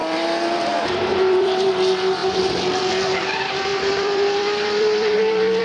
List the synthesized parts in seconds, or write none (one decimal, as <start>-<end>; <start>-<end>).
0.0-0.7; 1.1-1.7; 3.7-5.6